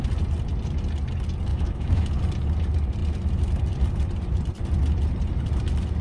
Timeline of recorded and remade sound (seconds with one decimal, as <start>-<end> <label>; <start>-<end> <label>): 0.0-1.5 recorded; 1.5-2.1 remade; 2.1-6.0 recorded